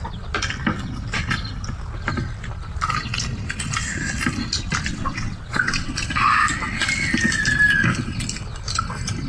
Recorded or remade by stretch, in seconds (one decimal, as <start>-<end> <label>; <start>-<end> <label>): 0.0-4.9 recorded; 4.9-5.9 remade; 5.9-9.3 recorded